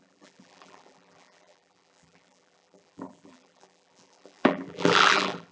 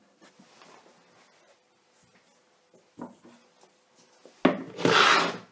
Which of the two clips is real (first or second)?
second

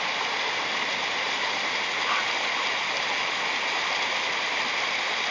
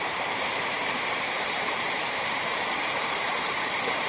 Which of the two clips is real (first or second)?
first